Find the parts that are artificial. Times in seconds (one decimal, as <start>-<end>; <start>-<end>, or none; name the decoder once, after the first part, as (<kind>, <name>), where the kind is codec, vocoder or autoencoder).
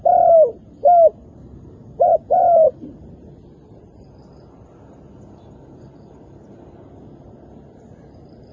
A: none